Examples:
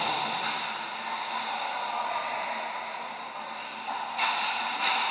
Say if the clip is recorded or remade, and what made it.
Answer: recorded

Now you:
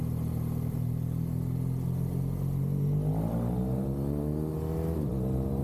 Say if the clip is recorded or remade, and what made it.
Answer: recorded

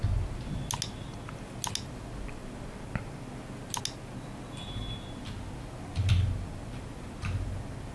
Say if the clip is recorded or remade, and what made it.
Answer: recorded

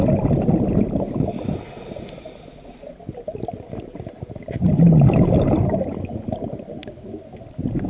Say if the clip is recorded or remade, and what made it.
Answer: recorded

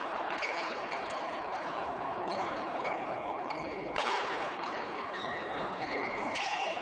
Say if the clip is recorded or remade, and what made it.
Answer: remade, codec, HILCodec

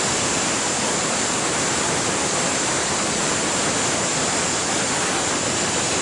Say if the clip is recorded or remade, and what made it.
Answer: remade, vocoder, BigVGAN v2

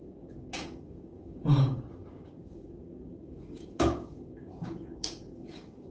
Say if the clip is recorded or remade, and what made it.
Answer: remade, codec, DAC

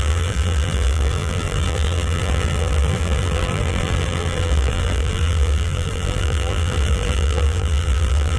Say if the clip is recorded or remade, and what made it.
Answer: remade, vocoder, BigVGAN v2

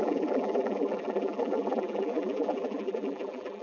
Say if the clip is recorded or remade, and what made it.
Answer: remade, vocoder, BigVGAN v2